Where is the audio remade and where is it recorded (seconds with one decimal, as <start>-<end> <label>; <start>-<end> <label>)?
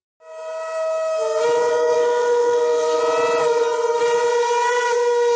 0.0-1.7 recorded; 1.7-3.0 remade; 3.0-3.4 recorded; 3.4-4.0 remade; 4.0-5.4 recorded